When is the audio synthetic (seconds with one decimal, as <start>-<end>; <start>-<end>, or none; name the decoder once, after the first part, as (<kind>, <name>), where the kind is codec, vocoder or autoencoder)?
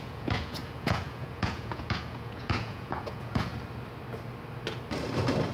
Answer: 0.0-3.5 (vocoder, Vocos)